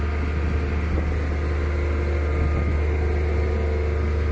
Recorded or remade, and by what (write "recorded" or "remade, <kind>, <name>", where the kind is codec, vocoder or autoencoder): recorded